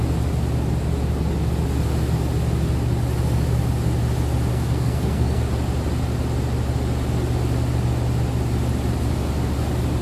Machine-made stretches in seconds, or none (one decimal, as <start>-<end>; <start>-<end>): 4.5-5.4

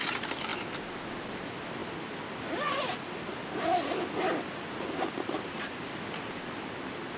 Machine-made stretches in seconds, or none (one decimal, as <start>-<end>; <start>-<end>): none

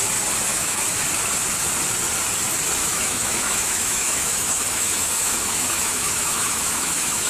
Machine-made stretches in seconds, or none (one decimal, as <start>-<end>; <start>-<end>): 0.5-1.0; 2.8-7.3